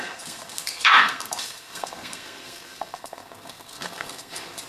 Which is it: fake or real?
fake